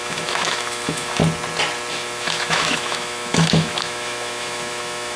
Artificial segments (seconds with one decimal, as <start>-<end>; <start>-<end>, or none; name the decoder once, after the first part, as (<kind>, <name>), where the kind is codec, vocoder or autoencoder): 0.0-1.2 (autoencoder, DAC-VAE); 1.9-5.2